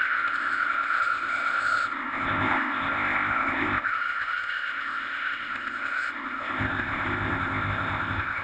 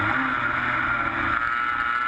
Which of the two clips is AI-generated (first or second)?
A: first